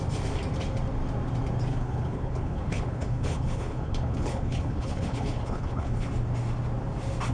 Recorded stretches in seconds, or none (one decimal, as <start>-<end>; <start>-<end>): 0.0-1.7; 6.1-7.3